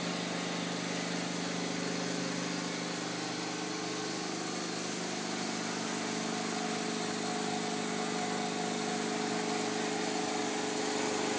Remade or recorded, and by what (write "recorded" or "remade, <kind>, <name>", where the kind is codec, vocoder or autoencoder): recorded